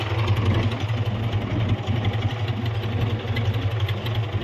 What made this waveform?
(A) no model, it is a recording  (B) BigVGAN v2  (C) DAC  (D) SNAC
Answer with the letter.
A